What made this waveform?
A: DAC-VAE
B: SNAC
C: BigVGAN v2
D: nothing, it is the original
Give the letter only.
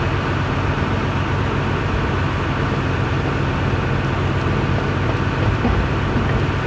D